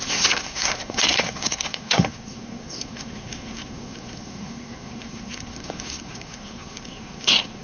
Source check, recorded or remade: remade